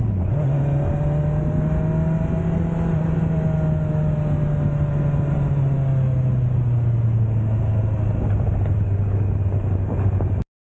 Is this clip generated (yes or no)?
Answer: no